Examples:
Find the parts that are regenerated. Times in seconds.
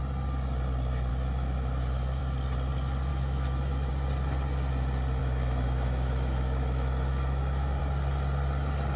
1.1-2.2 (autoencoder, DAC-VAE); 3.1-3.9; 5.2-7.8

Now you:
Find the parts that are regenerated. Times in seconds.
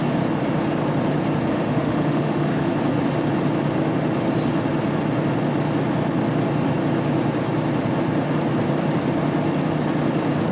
1.5-2.7 (autoencoder, DAC-VAE)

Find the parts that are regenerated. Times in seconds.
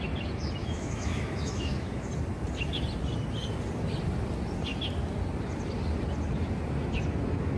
0.6-2.1 (autoencoder, DAC-VAE)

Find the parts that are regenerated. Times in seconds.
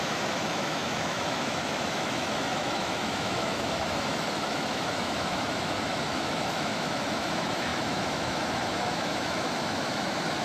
0.0-10.4 (autoencoder, DAC-VAE)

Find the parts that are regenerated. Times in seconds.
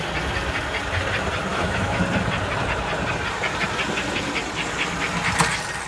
1.5-2.0 (autoencoder, DAC-VAE)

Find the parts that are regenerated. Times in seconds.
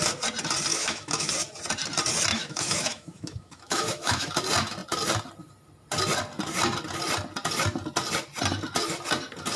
0.7-1.3 (autoencoder, DAC-VAE); 2.3-4.3